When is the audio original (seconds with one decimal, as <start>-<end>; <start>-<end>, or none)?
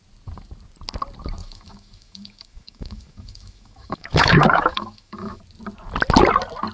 0.0-1.4; 5.4-6.7